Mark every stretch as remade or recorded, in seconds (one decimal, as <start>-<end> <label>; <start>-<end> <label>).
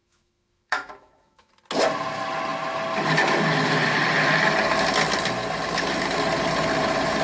0.0-1.5 remade; 1.5-7.2 recorded